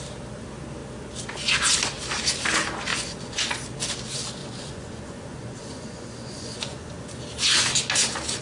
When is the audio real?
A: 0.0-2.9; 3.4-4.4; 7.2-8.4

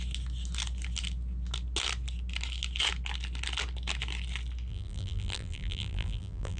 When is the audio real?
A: 0.0-4.7